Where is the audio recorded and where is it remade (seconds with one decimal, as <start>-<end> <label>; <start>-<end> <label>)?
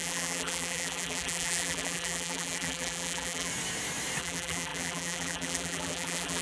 0.0-3.5 remade; 3.5-4.2 recorded; 4.2-6.4 remade